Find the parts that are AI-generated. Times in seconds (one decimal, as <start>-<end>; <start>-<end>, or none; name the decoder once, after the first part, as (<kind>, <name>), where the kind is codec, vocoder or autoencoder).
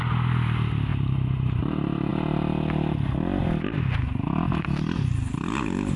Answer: 0.9-1.6 (vocoder, BigVGAN v2)